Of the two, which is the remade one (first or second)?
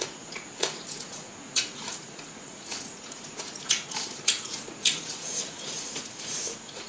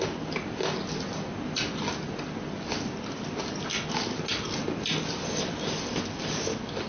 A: first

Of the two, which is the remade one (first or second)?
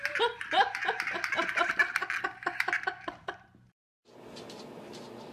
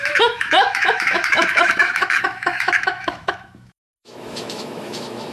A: second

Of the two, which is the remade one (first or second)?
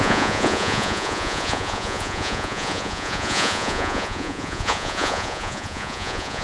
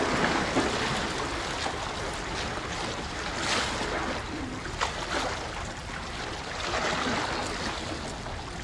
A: first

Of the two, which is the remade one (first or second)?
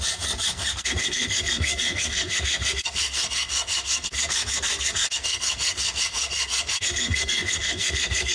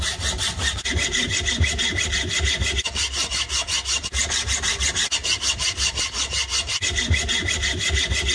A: first